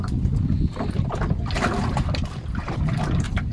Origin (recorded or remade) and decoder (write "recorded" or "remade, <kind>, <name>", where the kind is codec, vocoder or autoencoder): recorded